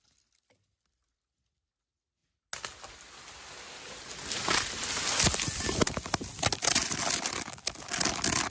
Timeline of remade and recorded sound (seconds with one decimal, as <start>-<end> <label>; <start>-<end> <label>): 0.0-8.5 recorded